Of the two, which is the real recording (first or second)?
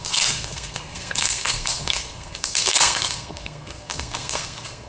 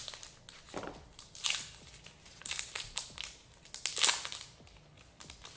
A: second